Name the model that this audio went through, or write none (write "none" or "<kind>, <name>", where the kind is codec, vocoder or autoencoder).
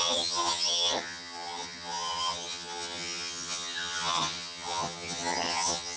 vocoder, HiFi-GAN